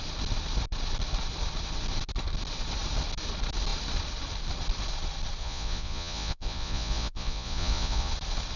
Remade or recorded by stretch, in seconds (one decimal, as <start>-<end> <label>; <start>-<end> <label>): 0.0-5.4 recorded; 5.4-8.1 remade; 8.1-8.6 recorded